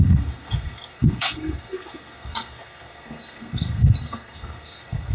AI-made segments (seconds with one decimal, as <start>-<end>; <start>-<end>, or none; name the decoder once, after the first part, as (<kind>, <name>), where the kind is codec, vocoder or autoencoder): 0.0-5.1 (codec, SNAC)